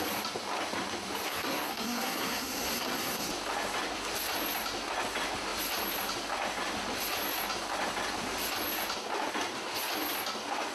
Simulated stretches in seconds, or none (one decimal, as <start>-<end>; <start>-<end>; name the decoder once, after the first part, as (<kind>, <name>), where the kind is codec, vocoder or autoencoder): 1.3-3.3 (codec, SNAC)